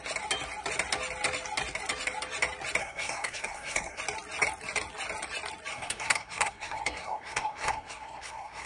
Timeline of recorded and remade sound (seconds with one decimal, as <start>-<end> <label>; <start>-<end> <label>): 0.0-2.8 recorded; 2.8-4.0 remade; 4.0-5.7 recorded; 5.7-8.7 remade